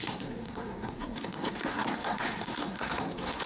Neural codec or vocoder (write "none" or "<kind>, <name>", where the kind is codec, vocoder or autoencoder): codec, SNAC